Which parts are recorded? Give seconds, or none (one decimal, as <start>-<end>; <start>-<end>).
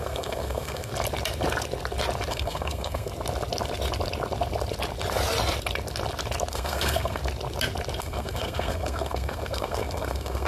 0.9-2.3; 3.1-6.5; 7.2-8.0